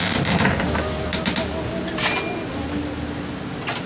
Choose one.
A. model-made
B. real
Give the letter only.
B